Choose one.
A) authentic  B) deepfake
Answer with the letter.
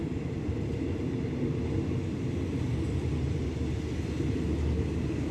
A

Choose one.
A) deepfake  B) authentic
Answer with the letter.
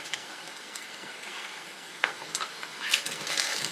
A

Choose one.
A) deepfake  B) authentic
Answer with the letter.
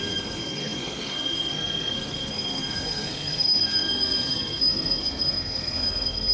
A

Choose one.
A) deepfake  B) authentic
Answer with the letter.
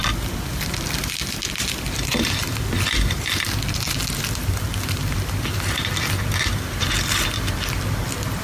A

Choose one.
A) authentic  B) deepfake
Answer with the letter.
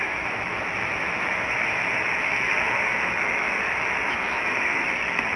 B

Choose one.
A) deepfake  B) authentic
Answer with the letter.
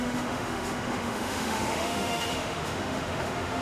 A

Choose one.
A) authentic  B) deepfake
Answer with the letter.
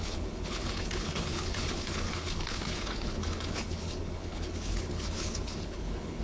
B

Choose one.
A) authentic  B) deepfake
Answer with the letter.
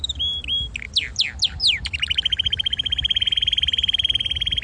A